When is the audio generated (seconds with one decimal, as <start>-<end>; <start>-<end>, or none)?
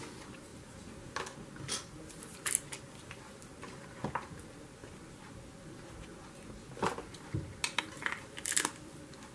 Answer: none